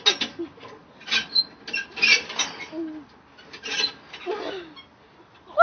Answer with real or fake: real